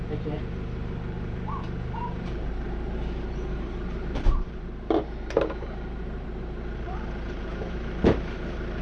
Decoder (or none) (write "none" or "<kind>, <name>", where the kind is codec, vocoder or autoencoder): vocoder, BigVGAN v2